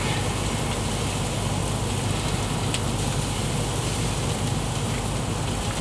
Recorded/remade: recorded